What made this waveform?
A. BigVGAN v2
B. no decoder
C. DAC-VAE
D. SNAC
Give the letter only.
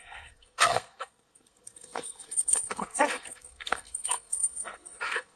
D